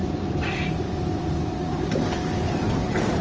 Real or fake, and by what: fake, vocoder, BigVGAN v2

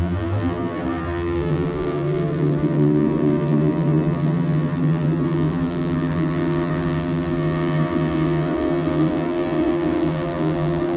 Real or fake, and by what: fake, vocoder, BigVGAN v2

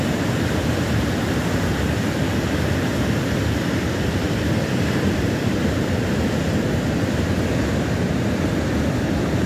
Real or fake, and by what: fake, vocoder, BigVGAN v2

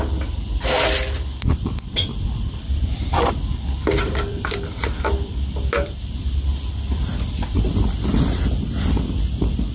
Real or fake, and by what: fake, vocoder, BigVGAN v2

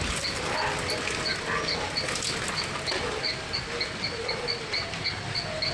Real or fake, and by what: real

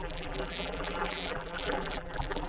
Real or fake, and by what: fake, vocoder, BigVGAN v2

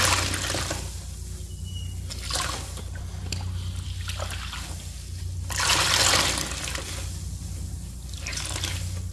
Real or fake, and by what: real